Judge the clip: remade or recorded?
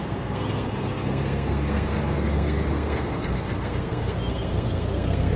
remade